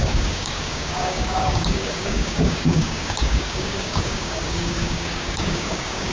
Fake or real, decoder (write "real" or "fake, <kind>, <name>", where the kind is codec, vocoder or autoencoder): fake, codec, DAC